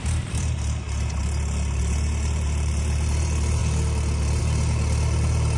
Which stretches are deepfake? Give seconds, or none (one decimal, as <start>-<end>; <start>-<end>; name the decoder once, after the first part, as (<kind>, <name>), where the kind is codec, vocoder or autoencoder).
0.0-1.2 (vocoder, BigVGAN v2); 1.8-3.6; 4.4-5.6